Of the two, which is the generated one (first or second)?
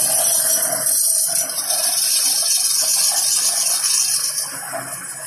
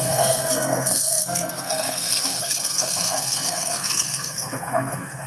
second